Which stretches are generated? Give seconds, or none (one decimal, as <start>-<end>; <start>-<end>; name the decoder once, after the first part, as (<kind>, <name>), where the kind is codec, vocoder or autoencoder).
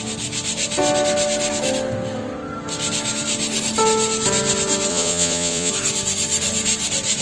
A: 4.9-5.7 (vocoder, Vocos)